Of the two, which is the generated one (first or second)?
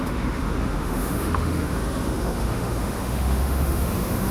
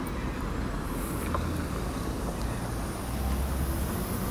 first